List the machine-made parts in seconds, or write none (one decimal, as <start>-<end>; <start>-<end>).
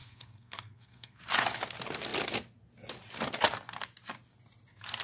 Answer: 0.0-1.2